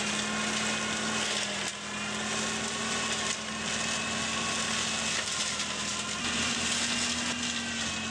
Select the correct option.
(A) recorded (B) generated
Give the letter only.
A